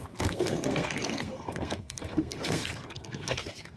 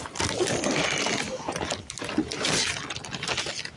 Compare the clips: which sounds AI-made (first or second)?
first